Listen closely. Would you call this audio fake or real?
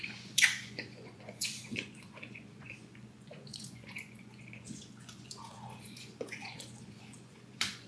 fake